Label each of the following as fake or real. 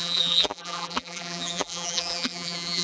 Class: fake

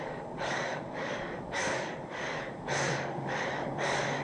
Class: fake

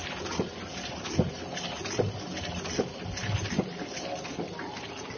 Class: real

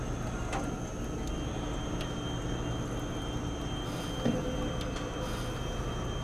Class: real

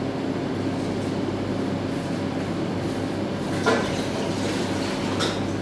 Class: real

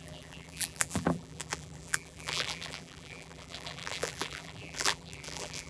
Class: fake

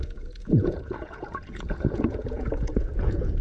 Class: fake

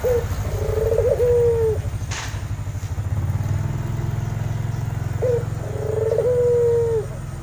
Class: real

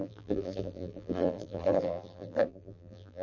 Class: fake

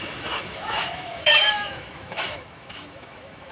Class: fake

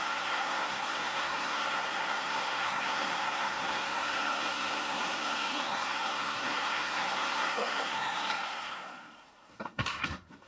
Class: fake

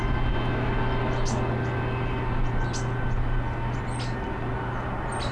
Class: real